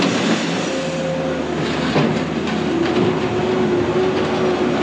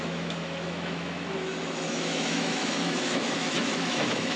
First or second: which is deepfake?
second